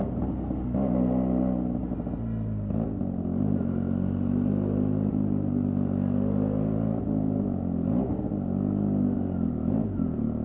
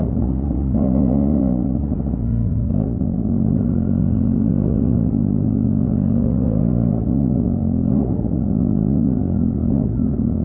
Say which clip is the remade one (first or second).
second